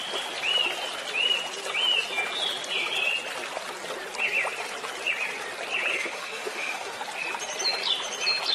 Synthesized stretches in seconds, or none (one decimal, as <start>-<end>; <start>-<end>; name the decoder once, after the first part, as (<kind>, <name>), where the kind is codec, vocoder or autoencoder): 5.9-7.0 (autoencoder, DAC-VAE)